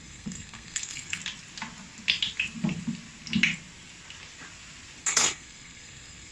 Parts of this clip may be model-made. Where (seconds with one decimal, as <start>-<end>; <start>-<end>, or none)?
0.0-1.2; 5.0-6.3